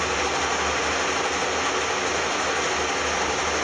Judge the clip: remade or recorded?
recorded